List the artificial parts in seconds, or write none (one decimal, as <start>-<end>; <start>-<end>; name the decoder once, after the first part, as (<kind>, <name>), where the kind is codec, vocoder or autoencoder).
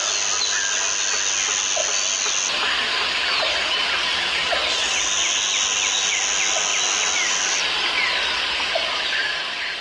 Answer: none